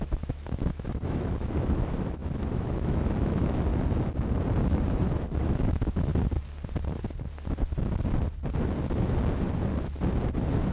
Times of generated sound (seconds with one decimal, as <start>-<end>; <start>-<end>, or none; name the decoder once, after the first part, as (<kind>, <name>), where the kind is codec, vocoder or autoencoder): 0.0-3.7 (autoencoder, DAC-VAE); 5.0-6.1